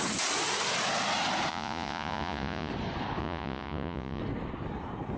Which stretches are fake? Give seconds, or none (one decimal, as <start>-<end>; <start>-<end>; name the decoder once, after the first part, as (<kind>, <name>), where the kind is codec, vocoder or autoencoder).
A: 1.5-2.7 (vocoder, Vocos); 3.2-4.2